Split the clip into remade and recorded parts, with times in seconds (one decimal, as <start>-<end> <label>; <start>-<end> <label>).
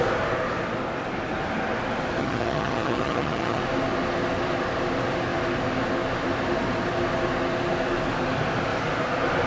0.0-2.2 recorded; 2.2-3.6 remade; 3.6-9.5 recorded